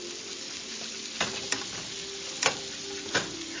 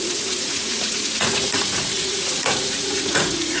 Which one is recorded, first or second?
first